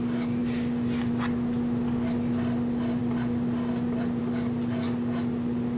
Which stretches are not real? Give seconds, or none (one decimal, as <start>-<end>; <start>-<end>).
none